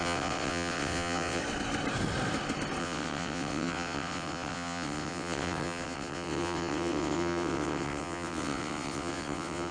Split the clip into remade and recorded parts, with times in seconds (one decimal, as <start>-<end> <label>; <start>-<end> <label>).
0.0-1.4 remade; 1.4-2.8 recorded; 2.8-9.7 remade